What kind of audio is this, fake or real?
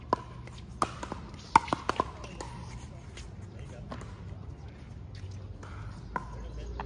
real